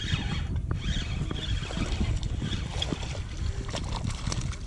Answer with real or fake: real